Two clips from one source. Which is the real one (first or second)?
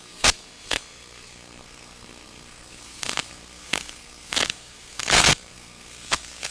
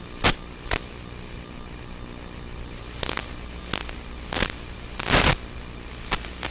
second